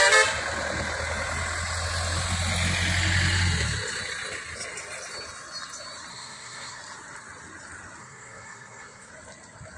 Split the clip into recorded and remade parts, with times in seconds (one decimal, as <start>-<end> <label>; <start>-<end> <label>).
0.0-6.1 recorded; 6.1-6.8 remade; 6.8-8.0 recorded; 8.0-9.1 remade; 9.1-9.8 recorded